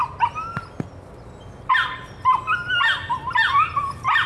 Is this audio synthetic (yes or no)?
no